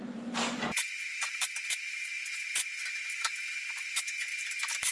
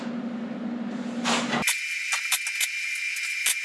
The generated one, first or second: first